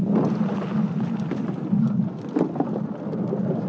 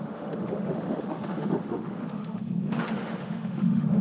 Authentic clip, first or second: first